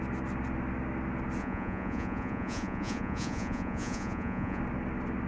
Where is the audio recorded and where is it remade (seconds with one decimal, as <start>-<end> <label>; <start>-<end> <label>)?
0.0-1.4 recorded; 1.4-4.6 remade; 4.6-5.3 recorded